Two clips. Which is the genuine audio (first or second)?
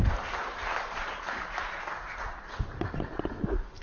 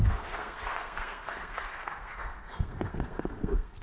first